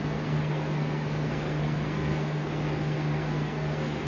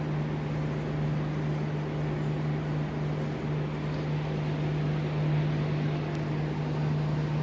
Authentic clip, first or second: second